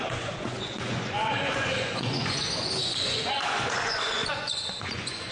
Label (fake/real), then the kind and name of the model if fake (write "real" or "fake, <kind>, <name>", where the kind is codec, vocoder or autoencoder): fake, vocoder, Vocos